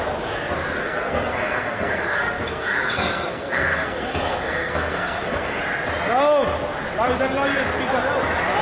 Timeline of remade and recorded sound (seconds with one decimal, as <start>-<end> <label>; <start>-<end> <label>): 0.0-0.8 recorded; 0.8-5.6 remade; 5.6-8.6 recorded